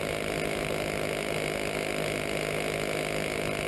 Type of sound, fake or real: real